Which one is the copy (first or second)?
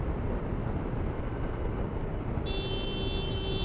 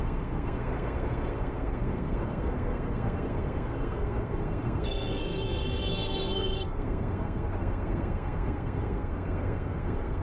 second